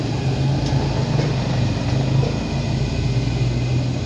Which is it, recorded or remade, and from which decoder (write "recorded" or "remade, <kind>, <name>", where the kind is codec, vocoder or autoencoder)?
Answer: recorded